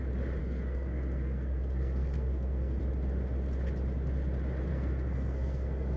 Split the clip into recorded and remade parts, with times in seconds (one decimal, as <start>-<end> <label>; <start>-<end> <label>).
0.0-0.4 recorded; 0.4-2.8 remade; 2.8-4.7 recorded; 4.7-6.0 remade